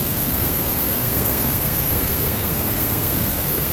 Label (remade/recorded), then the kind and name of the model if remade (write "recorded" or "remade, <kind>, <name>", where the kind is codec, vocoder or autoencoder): remade, codec, SNAC